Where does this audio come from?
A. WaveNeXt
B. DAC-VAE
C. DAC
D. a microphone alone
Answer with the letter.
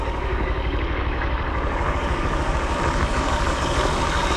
C